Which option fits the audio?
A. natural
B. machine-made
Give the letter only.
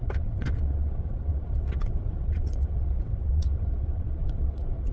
B